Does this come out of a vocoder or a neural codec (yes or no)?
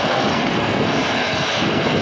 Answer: yes